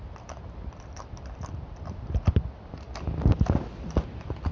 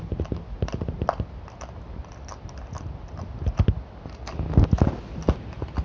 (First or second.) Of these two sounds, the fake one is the first